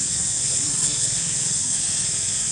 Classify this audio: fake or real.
fake